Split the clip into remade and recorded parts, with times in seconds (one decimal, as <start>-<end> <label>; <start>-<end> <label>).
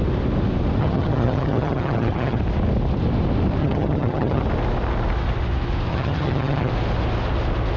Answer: 0.0-0.8 recorded; 0.8-2.4 remade; 2.4-3.6 recorded; 3.6-4.4 remade; 4.4-5.9 recorded; 5.9-6.7 remade; 6.7-7.8 recorded